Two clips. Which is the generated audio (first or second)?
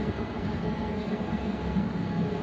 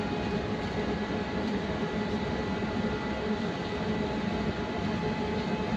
first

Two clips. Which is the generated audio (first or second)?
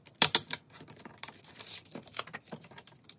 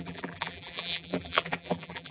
second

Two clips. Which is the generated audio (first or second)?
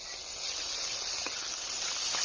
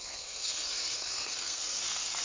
second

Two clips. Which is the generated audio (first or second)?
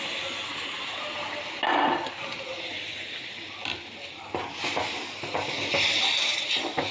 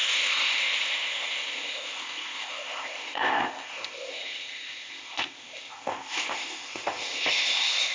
second